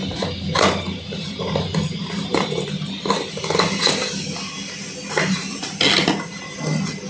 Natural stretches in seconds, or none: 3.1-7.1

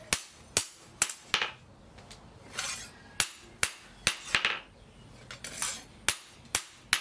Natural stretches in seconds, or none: 0.0-7.0

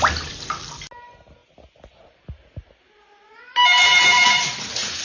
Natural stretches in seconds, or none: 0.0-5.0

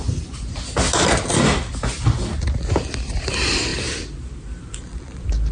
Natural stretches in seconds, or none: 0.0-5.5

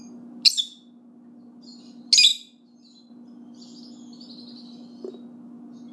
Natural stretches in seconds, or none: 0.0-5.9

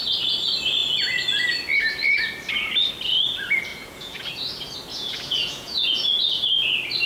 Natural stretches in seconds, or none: 0.0-3.7; 4.3-4.9; 6.1-7.1

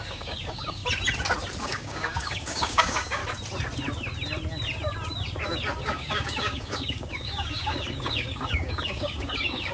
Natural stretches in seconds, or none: 0.8-1.6; 3.2-5.8

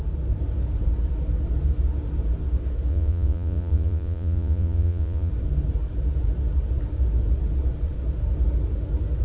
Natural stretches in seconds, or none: 0.0-2.9; 5.3-9.2